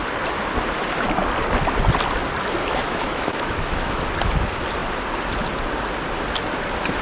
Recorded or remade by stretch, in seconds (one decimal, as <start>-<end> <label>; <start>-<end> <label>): 0.0-2.6 recorded; 2.6-4.0 remade; 4.0-7.0 recorded